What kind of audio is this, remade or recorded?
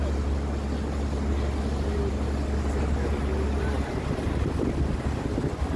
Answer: recorded